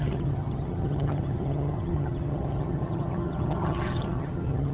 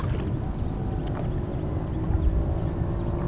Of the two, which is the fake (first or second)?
first